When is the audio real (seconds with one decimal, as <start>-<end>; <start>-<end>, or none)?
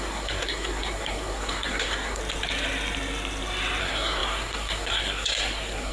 2.2-3.8